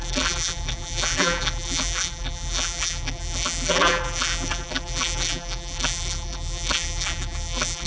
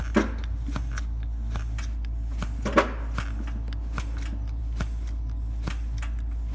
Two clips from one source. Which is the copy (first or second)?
first